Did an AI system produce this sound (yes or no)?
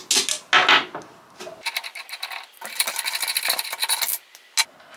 no